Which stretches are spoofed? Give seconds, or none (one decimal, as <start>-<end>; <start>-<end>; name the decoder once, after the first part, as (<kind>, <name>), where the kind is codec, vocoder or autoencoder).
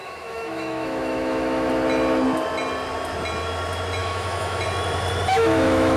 0.0-1.7 (autoencoder, DAC-VAE); 4.0-4.6; 5.3-6.0